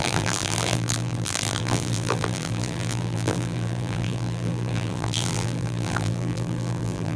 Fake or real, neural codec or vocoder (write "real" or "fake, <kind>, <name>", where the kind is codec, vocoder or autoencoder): fake, vocoder, BigVGAN v2